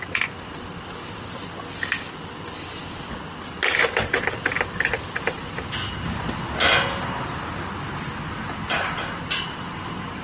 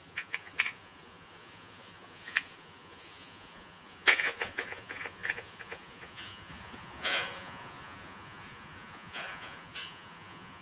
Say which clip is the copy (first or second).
second